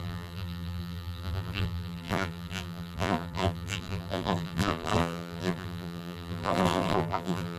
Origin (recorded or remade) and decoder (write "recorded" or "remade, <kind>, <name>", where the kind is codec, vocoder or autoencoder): remade, vocoder, BigVGAN v2